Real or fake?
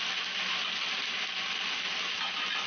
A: real